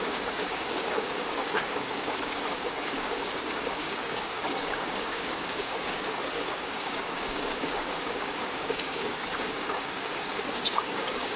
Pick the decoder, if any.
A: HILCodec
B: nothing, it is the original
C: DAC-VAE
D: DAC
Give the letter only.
D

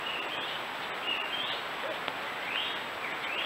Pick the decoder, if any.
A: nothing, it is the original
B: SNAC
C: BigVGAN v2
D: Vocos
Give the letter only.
A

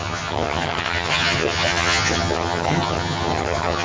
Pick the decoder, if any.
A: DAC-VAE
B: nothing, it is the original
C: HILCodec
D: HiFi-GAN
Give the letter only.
D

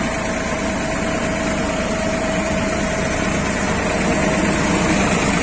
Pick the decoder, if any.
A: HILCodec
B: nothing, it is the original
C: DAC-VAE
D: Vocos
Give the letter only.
B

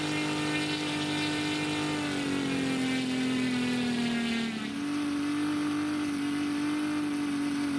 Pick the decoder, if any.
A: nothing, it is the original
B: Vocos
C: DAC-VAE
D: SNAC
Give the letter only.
A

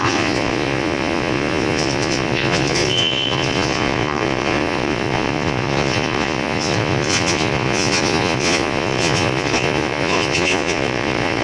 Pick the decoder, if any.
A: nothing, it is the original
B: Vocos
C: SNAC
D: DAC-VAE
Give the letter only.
B